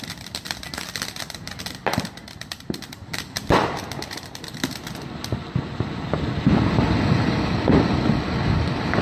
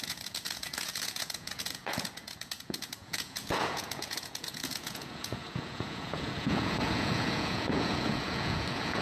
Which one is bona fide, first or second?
first